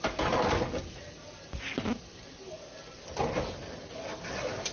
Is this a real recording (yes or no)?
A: yes